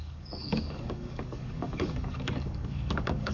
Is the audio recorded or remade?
remade